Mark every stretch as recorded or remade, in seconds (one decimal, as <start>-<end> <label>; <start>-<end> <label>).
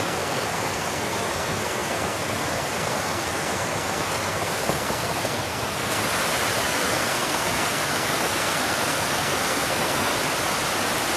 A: 0.0-6.0 remade; 6.0-6.6 recorded; 6.6-10.1 remade; 10.1-11.2 recorded